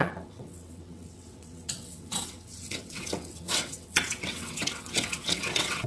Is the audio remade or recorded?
remade